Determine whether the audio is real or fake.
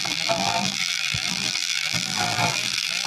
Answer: fake